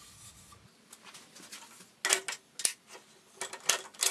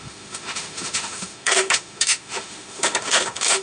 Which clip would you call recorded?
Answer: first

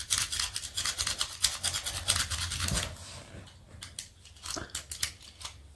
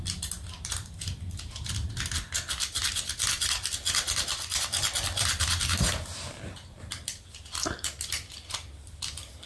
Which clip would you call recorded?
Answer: first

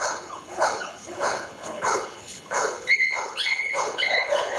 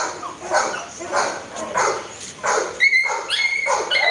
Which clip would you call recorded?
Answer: second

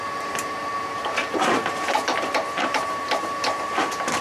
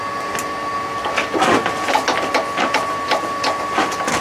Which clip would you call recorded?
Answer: second